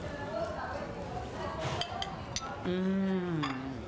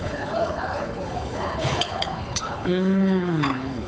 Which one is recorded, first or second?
first